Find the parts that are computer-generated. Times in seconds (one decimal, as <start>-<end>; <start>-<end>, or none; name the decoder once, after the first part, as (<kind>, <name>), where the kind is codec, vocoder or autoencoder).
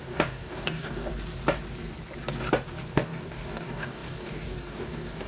0.0-1.1 (codec, DAC); 2.9-5.3